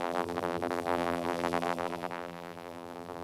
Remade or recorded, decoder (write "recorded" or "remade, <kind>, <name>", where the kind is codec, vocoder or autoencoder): remade, vocoder, BigVGAN v2